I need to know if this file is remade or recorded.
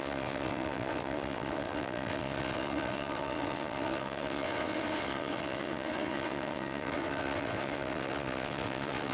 remade